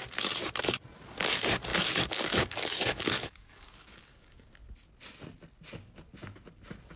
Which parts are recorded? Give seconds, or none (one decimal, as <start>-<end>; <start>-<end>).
0.0-1.7; 4.5-7.0